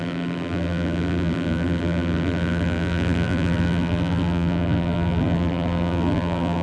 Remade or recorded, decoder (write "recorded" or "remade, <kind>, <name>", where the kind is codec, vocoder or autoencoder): remade, vocoder, BigVGAN v2